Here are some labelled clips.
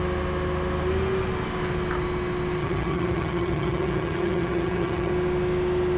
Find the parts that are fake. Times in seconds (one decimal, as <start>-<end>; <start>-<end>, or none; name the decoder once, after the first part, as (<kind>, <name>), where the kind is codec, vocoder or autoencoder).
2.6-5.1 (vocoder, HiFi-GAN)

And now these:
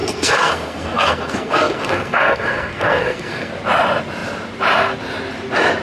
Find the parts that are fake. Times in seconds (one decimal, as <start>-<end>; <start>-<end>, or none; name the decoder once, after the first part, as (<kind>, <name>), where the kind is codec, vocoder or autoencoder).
0.0-3.5 (codec, SNAC)

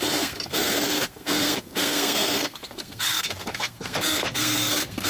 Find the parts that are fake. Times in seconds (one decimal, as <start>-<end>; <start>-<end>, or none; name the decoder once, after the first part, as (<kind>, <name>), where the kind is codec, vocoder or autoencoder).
0.0-5.1 (codec, SNAC)